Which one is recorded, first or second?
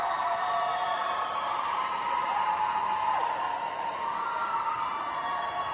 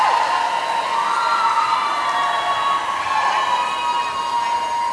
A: second